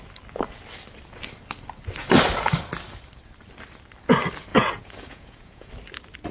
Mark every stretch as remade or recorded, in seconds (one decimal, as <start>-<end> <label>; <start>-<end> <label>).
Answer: 0.0-4.5 recorded; 4.5-5.7 remade; 5.7-6.3 recorded